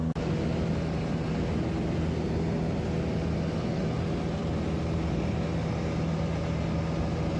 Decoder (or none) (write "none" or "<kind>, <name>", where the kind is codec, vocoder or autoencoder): none